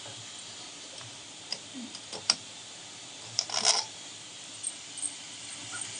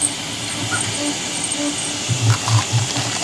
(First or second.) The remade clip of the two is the first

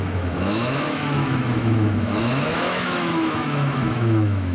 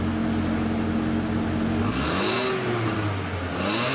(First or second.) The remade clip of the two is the first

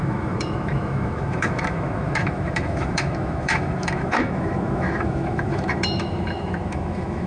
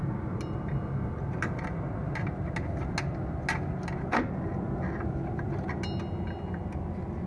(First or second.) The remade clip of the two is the first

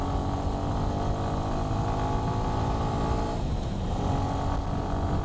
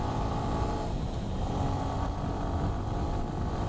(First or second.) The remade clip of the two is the second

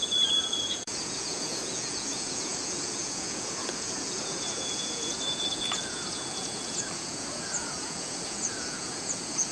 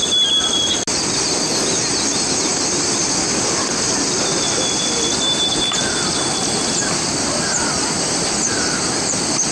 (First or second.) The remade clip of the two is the first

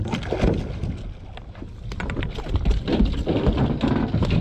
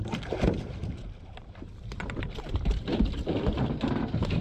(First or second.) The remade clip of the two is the second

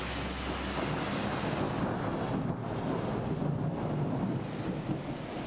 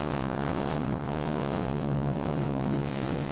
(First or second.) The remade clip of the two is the second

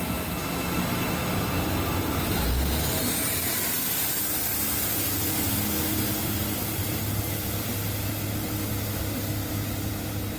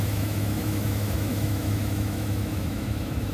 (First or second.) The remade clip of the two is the second